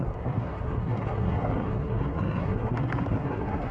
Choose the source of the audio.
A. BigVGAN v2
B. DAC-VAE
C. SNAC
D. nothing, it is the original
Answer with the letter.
C